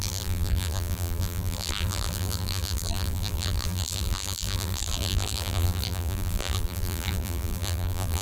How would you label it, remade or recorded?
remade